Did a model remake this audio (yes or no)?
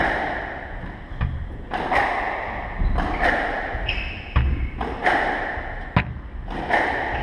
no